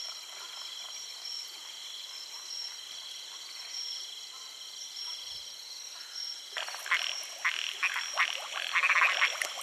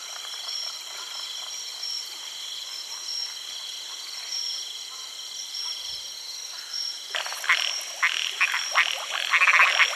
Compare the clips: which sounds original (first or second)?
second